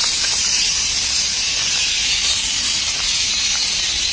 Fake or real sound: fake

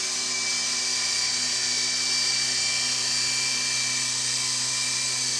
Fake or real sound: real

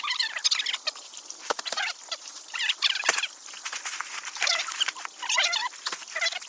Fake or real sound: real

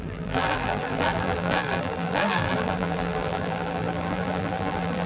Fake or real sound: fake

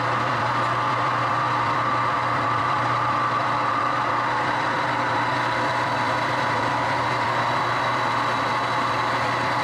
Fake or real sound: fake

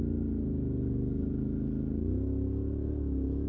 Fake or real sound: real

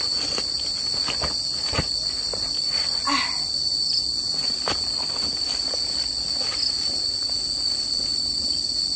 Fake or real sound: real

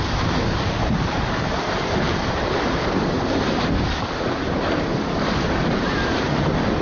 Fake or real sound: fake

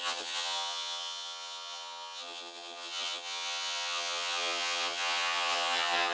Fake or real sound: fake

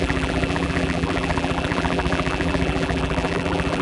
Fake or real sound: fake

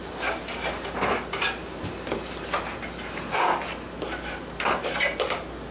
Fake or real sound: real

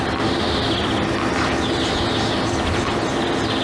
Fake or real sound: real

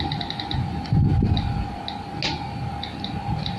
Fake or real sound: real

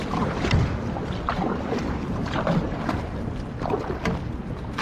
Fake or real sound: real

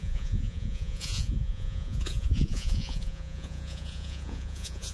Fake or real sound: fake